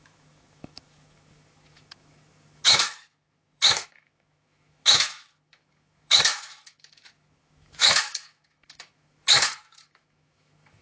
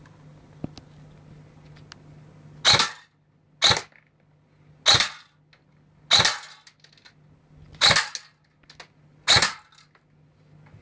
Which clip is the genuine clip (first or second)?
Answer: second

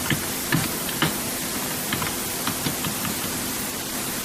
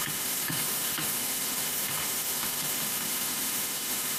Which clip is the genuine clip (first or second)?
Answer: first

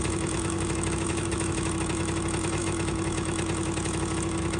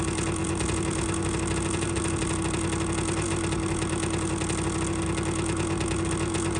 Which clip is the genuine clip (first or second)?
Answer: second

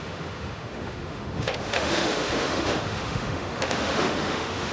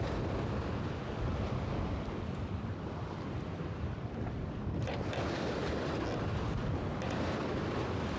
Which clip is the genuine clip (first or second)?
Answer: second